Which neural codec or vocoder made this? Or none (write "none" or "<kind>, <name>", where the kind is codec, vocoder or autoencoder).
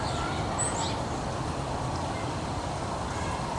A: none